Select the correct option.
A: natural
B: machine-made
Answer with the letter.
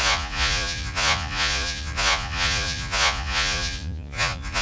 B